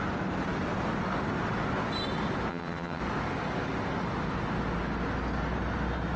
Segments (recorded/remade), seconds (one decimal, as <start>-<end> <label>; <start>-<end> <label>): 0.0-2.5 recorded; 2.5-3.0 remade; 3.0-6.2 recorded